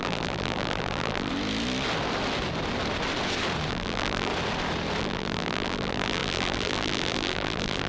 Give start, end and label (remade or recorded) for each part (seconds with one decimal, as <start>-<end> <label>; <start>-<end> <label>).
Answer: 0.0-1.3 remade; 1.3-3.7 recorded; 3.7-4.3 remade; 4.3-5.0 recorded; 5.0-7.9 remade